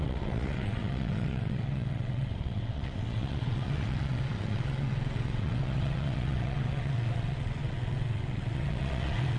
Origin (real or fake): fake